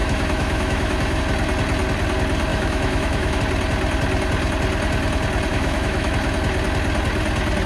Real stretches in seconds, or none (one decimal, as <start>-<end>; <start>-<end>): 1.2-2.5; 3.4-5.5; 6.1-7.7